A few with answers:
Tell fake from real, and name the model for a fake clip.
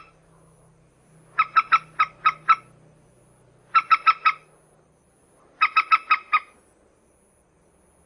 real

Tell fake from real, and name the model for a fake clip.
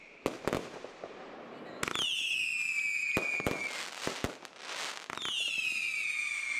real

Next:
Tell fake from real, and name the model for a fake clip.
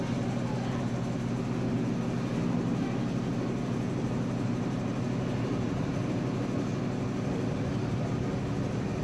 real